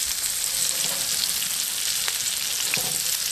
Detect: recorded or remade recorded